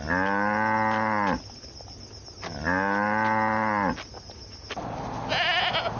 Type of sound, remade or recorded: recorded